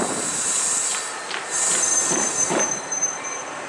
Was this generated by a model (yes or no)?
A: yes